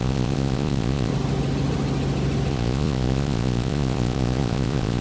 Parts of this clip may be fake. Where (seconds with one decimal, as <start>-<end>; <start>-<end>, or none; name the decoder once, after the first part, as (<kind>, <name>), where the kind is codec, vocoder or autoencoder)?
0.0-1.1 (vocoder, Vocos); 2.5-5.0